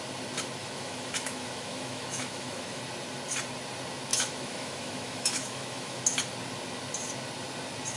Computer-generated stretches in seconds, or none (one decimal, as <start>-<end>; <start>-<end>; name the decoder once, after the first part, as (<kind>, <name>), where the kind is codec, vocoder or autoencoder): 0.6-2.8 (autoencoder, DAC-VAE); 4.1-6.0